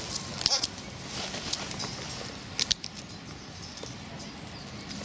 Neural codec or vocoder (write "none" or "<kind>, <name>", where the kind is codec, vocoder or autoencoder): none